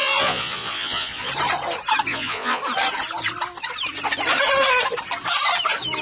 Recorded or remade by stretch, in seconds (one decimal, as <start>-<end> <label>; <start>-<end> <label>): 0.0-1.3 remade; 1.3-2.1 recorded; 2.1-2.6 remade; 2.6-6.0 recorded